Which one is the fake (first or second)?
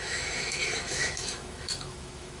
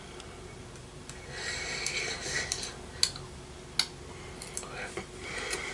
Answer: first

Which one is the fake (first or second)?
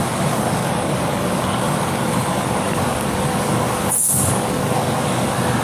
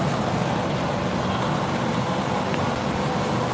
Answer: first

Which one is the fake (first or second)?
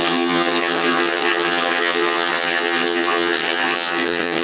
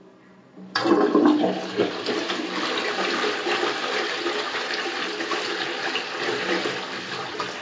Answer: first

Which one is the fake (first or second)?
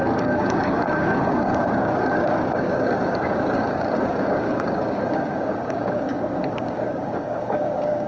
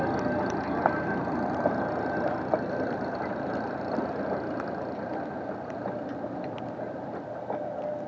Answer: first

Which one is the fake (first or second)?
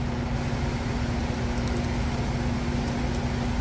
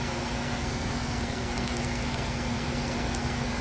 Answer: second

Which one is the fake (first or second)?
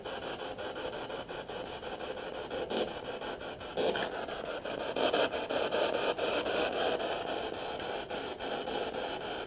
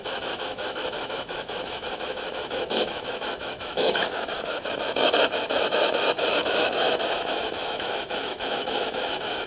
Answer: second